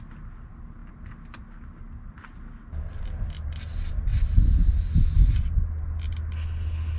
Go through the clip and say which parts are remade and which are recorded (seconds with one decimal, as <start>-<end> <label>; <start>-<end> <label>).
0.0-7.0 recorded